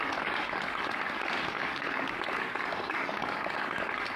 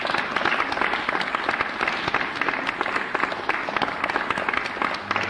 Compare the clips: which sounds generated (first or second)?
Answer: first